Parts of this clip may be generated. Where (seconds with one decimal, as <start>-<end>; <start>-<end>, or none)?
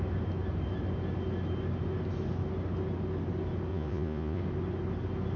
3.7-4.4